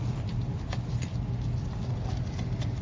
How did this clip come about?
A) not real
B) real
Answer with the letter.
B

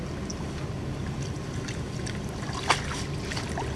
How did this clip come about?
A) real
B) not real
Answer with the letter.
A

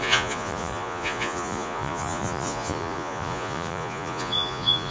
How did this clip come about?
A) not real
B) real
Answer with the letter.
A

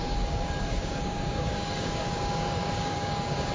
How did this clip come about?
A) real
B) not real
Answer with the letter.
B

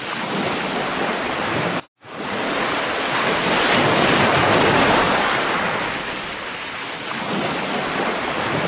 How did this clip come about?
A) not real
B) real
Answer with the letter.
B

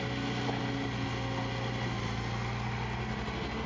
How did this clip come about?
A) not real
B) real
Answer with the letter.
B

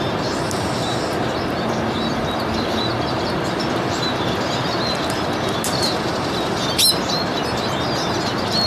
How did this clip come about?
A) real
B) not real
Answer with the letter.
A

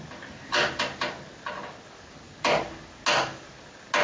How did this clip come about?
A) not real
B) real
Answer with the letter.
B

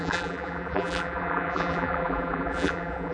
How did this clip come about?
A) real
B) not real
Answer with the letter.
B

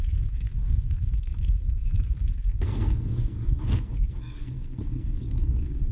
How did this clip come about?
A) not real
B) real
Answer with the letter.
A